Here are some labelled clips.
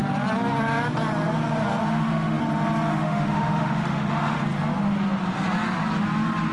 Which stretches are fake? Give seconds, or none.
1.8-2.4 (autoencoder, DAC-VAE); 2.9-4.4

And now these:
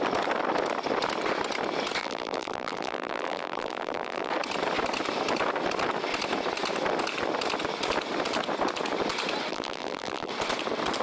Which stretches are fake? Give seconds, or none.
2.0-4.3 (vocoder, BigVGAN v2); 9.5-10.3

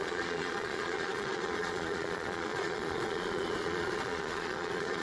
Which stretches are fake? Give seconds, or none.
0.0-5.0 (vocoder, Vocos)